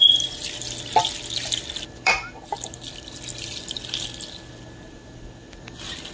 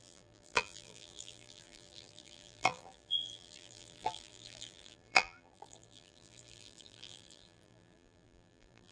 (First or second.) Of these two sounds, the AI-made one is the second